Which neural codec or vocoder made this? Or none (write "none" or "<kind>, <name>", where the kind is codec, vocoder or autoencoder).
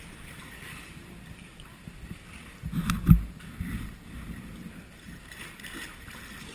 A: none